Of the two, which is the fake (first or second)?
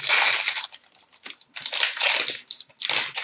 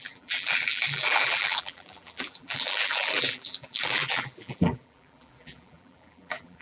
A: second